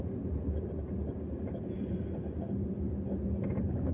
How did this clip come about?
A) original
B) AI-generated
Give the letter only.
A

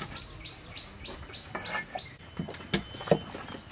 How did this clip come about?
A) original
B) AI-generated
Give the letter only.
A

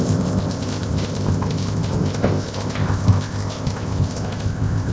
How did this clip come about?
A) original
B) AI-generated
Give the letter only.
B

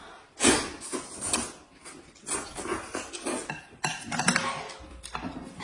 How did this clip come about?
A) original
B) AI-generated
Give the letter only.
A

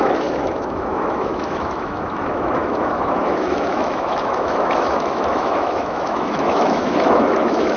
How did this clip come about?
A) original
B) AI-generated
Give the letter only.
B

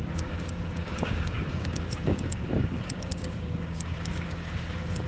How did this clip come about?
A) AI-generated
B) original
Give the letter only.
A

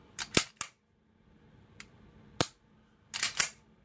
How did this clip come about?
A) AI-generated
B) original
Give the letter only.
B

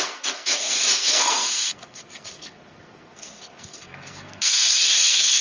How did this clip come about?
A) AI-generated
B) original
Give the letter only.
A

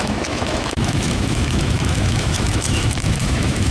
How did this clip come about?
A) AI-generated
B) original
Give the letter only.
A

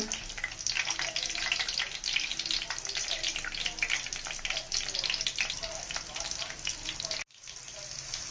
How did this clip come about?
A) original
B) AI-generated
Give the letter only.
A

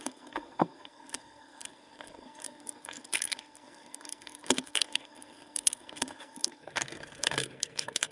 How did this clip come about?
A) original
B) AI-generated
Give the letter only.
B